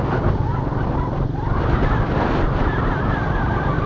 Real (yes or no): yes